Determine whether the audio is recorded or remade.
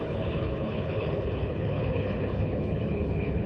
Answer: remade